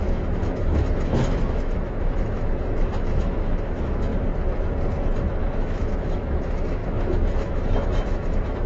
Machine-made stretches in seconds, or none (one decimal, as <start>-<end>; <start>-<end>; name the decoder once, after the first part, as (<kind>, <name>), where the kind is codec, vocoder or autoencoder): 0.0-4.1 (autoencoder, DAC-VAE); 5.4-8.7